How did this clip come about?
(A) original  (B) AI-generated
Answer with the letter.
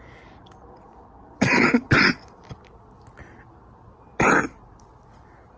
A